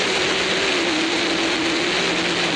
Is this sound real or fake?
real